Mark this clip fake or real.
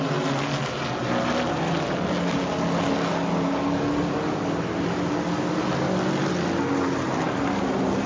real